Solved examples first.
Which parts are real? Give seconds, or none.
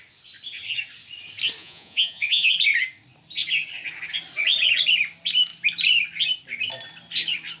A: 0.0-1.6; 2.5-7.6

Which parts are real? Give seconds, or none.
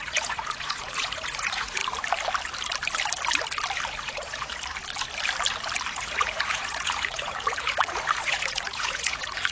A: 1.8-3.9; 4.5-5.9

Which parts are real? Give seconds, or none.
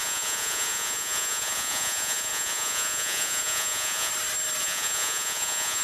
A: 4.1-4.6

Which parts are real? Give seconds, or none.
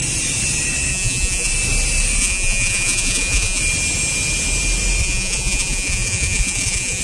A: 0.0-0.9; 1.5-2.2; 3.6-5.0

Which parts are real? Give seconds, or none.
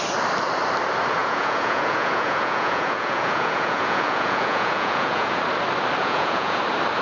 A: 0.0-1.2; 5.4-6.0; 6.6-7.0